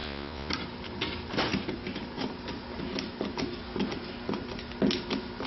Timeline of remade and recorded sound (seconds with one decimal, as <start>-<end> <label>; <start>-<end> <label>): 0.0-0.5 remade; 0.5-5.5 recorded